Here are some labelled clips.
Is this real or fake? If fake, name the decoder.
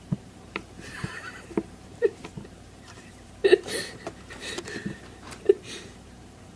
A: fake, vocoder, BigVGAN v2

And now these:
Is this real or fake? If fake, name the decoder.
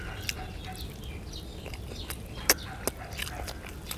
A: real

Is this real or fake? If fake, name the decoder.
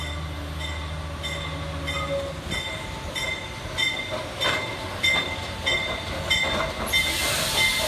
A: real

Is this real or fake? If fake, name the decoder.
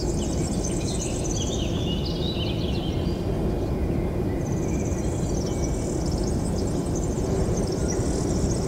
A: real